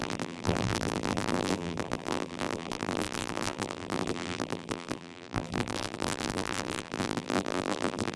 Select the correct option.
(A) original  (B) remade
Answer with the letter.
B